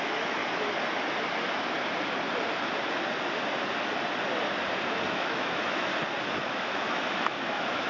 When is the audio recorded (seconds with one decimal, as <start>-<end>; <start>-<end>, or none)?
0.4-5.1; 5.9-6.4